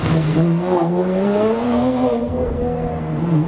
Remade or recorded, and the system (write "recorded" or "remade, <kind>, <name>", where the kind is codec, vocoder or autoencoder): remade, codec, SNAC